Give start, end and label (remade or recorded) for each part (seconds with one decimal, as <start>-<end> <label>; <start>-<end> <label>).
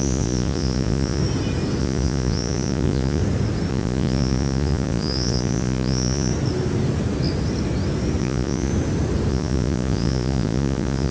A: 0.0-1.2 remade; 1.2-1.8 recorded; 1.8-3.2 remade; 3.2-3.7 recorded; 3.7-6.3 remade; 6.3-8.2 recorded; 8.2-8.7 remade; 8.7-9.3 recorded; 9.3-11.1 remade